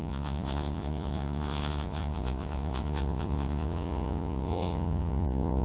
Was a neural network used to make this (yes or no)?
yes